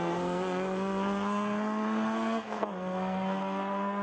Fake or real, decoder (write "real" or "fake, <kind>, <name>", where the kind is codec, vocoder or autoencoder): fake, codec, SNAC